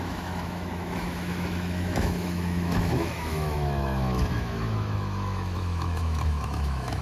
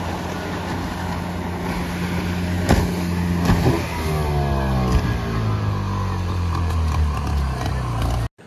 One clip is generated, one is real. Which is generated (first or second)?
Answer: first